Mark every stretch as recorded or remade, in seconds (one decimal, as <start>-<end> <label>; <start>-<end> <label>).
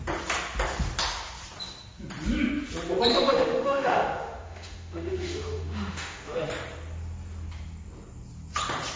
0.0-3.1 recorded; 3.1-6.5 remade; 6.5-9.0 recorded